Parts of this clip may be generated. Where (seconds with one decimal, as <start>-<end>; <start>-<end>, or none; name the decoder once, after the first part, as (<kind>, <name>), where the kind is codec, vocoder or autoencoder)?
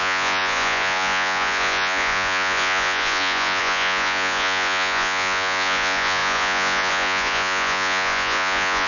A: 0.0-8.9 (vocoder, Vocos)